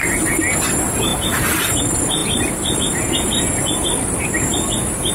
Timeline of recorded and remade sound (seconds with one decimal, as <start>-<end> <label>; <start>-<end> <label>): 0.0-1.1 recorded; 1.1-1.8 remade; 1.8-5.1 recorded